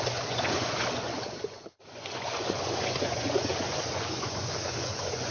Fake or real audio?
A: fake